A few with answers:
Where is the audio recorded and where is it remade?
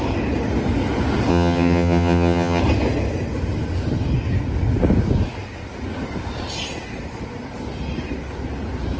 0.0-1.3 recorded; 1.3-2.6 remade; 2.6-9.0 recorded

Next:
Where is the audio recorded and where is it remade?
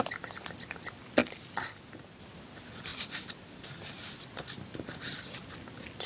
0.0-6.1 recorded